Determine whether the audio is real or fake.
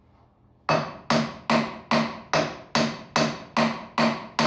real